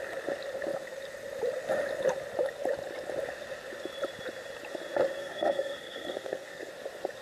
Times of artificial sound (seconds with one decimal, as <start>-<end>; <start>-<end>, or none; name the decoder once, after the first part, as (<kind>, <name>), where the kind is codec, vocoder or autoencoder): 5.2-6.7 (codec, SNAC)